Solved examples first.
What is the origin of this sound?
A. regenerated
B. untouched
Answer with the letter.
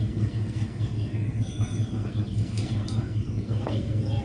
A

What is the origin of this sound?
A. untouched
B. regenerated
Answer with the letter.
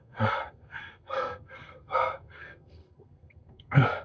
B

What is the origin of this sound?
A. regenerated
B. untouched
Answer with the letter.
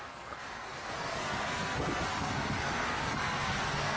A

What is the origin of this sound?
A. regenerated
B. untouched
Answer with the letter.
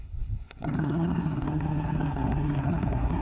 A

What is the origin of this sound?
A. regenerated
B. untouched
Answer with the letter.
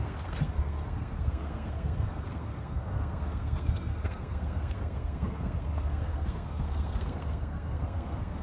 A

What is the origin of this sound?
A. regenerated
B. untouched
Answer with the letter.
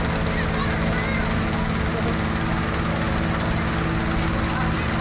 B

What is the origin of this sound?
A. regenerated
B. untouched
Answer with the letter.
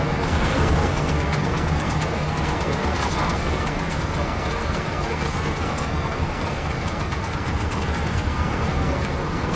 A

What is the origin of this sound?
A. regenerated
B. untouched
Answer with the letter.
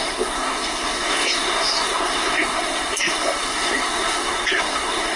A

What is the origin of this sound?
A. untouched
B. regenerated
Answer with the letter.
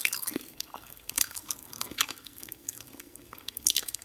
B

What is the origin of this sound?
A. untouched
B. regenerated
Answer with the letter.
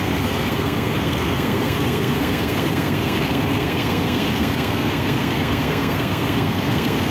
B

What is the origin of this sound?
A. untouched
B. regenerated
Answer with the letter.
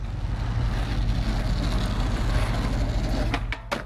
A